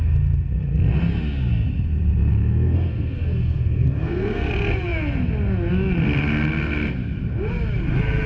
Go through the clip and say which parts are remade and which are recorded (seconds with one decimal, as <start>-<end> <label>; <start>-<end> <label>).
0.0-2.3 recorded; 2.3-4.5 remade; 4.5-8.3 recorded